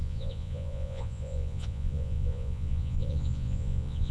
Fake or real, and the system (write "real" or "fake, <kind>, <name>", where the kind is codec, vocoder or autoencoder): fake, vocoder, Vocos